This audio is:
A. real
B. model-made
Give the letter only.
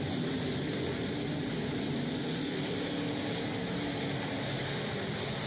A